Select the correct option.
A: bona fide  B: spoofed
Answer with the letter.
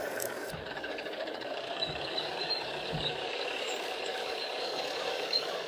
B